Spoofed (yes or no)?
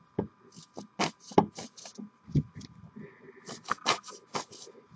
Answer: no